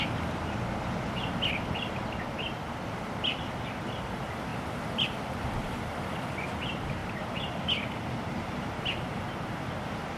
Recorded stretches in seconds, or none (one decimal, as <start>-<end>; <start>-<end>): 0.0-10.2